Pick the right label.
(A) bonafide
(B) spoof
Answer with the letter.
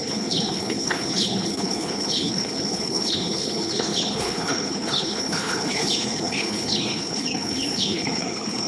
B